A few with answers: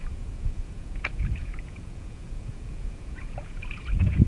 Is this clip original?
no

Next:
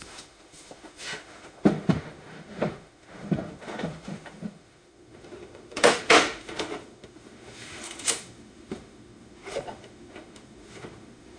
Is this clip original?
no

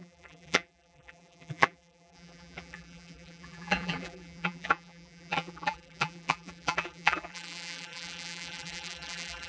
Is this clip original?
no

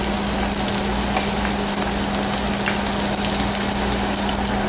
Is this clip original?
yes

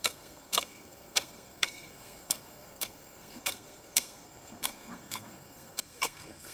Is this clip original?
no